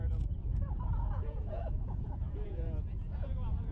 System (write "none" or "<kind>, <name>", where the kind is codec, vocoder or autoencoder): vocoder, Vocos